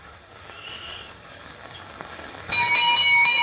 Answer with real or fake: fake